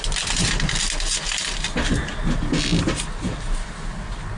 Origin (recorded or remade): recorded